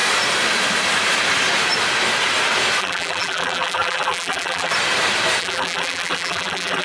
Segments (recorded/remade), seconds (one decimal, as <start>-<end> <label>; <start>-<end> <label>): 0.0-2.8 recorded; 2.8-4.7 remade; 4.7-5.4 recorded; 5.4-6.8 remade